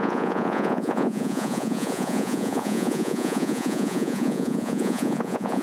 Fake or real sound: fake